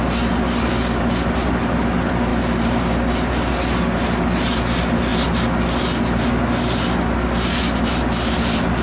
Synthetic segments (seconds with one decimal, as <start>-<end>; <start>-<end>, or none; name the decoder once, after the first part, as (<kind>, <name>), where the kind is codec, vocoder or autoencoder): none